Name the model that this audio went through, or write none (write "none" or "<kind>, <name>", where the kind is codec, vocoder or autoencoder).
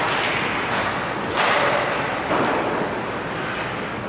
none